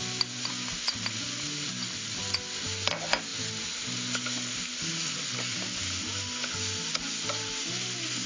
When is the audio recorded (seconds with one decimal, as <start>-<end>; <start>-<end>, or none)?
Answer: 0.0-8.3